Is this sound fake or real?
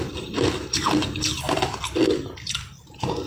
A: real